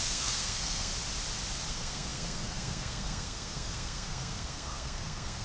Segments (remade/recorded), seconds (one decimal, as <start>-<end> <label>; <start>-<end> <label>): 0.0-0.9 remade; 0.9-1.7 recorded; 1.7-5.4 remade